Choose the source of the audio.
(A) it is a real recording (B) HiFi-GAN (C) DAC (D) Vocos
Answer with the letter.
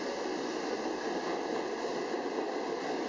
A